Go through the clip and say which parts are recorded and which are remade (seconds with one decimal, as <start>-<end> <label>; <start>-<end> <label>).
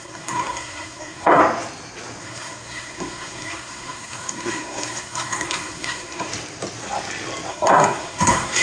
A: 0.0-1.4 remade; 1.4-2.2 recorded; 2.2-6.3 remade; 6.3-7.5 recorded; 7.5-8.6 remade